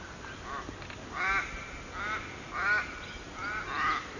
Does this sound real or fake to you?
real